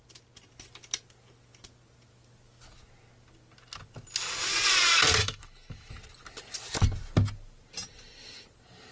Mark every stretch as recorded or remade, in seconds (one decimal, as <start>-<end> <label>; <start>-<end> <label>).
0.0-5.2 recorded; 5.2-5.9 remade; 5.9-8.9 recorded